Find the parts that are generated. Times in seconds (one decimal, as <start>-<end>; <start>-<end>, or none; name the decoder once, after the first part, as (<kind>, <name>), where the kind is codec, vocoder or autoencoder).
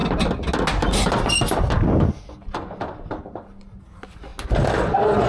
none